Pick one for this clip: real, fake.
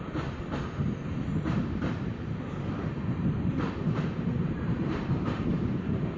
fake